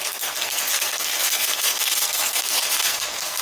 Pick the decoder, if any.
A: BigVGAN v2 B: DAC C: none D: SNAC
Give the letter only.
D